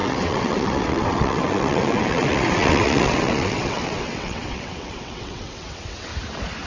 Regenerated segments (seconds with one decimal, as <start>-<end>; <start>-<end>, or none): 0.0-6.1